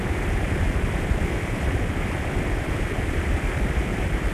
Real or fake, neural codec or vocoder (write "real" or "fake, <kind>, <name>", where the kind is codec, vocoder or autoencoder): real